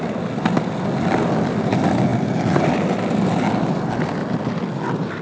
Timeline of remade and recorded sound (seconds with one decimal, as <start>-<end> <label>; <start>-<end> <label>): 0.0-5.2 recorded